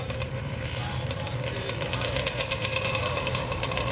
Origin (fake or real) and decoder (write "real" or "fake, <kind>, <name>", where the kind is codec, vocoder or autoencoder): fake, vocoder, BigVGAN v2